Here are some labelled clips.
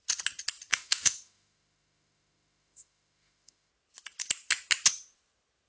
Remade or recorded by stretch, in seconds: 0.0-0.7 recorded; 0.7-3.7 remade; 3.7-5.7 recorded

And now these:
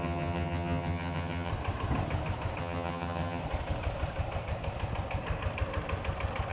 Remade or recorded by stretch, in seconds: 0.0-1.5 remade; 1.5-2.6 recorded; 2.6-3.4 remade; 3.4-6.5 recorded

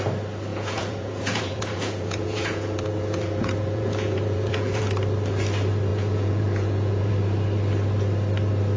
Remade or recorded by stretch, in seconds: 0.0-0.5 recorded; 0.5-4.8 remade; 4.8-5.9 recorded; 5.9-7.1 remade; 7.1-8.8 recorded

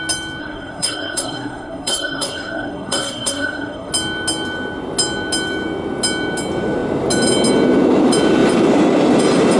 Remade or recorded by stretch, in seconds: 0.0-0.4 recorded; 0.4-3.9 remade; 3.9-9.6 recorded

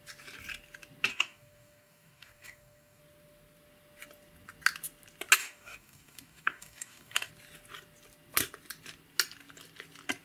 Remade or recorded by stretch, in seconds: 0.0-1.1 recorded; 1.1-3.0 remade; 3.0-5.4 recorded; 5.4-7.3 remade; 7.3-10.2 recorded

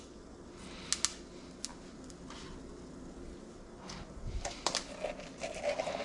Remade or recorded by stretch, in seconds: 0.0-6.0 recorded

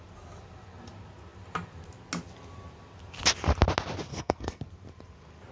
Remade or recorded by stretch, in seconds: 0.0-4.1 recorded; 4.1-4.6 remade; 4.6-5.5 recorded

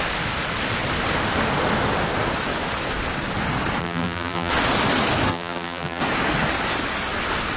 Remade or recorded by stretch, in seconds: 0.0-3.8 recorded; 3.8-4.5 remade; 4.5-5.3 recorded; 5.3-6.0 remade; 6.0-7.6 recorded